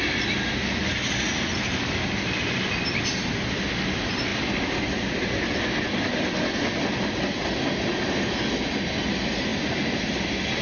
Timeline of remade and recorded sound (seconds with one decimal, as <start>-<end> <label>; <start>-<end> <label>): 0.0-10.6 recorded